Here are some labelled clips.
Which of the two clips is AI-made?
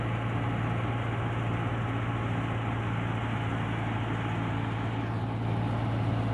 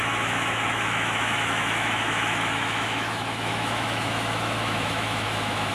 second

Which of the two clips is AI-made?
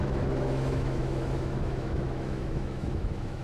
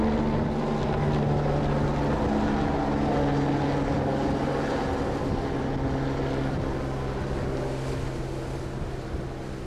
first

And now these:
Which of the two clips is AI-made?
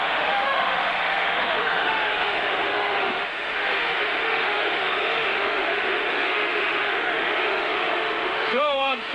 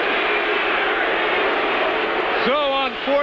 first